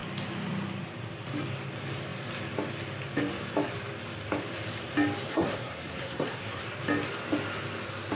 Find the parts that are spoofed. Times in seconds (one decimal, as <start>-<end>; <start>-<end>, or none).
5.3-6.6